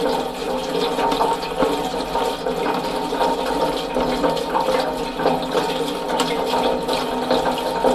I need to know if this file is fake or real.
real